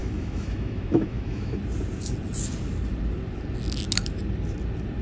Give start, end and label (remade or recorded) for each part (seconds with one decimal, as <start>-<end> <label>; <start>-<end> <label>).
0.0-1.6 remade; 1.6-5.0 recorded